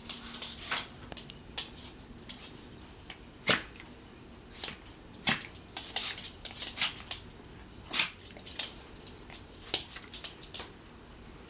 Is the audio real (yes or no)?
yes